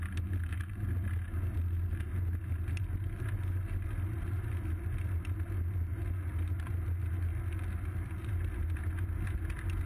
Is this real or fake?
real